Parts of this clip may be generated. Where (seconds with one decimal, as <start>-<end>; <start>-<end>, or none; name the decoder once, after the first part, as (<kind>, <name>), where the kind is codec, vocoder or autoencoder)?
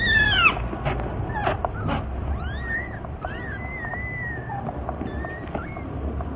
none